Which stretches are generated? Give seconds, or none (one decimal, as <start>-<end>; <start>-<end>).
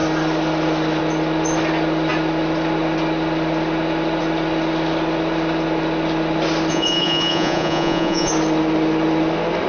6.7-8.3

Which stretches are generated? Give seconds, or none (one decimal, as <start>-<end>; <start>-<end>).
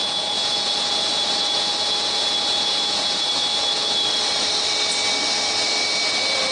0.0-3.9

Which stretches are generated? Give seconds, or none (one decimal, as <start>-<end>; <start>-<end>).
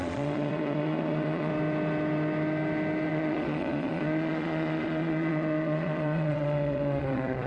0.0-1.5; 3.1-7.5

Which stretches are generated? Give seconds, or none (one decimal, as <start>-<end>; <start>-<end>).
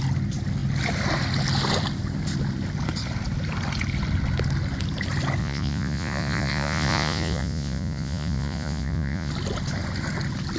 5.4-9.3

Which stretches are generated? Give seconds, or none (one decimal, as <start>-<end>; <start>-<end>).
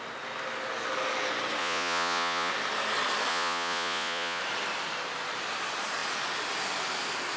1.6-2.5; 3.3-4.4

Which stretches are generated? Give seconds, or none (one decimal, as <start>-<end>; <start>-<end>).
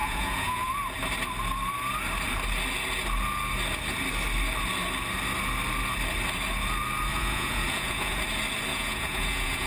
0.0-0.7; 7.1-8.2; 8.7-9.7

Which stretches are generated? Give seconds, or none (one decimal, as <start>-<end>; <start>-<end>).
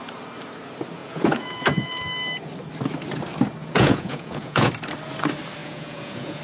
1.0-2.0; 3.6-4.7; 5.6-6.4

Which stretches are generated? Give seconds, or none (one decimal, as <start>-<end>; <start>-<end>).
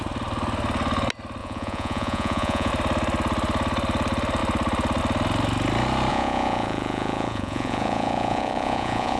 1.4-2.7; 6.1-9.2